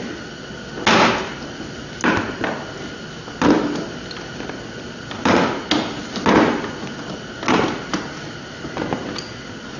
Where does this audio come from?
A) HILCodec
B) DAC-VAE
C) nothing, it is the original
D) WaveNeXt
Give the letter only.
C